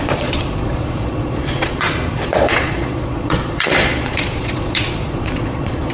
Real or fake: fake